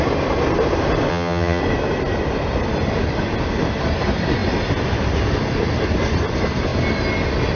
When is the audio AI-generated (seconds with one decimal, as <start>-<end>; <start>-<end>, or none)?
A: 1.1-1.6